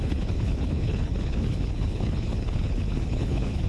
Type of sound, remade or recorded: remade